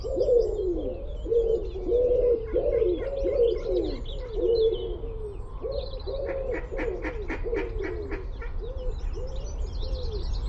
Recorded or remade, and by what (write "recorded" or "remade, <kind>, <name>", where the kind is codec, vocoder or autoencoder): recorded